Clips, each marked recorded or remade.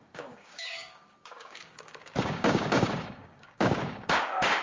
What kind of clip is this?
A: remade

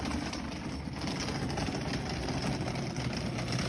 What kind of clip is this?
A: recorded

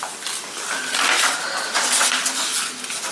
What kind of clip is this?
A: recorded